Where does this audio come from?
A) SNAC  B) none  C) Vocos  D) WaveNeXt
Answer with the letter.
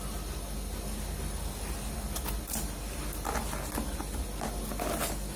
B